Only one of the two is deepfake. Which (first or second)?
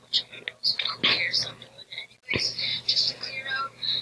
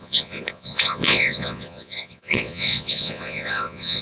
second